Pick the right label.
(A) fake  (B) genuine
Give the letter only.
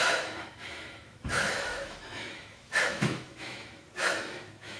A